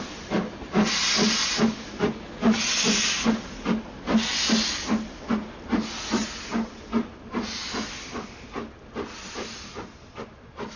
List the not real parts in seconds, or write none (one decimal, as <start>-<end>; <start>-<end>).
none